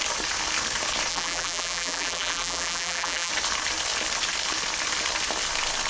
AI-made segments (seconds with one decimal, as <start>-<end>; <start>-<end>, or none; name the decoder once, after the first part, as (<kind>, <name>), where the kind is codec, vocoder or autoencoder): 1.1-3.3 (vocoder, BigVGAN v2)